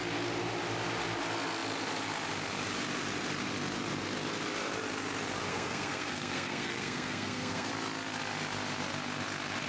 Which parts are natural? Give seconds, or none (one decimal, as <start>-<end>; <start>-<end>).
0.0-5.5; 7.7-9.7